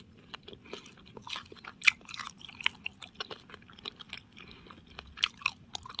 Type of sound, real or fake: real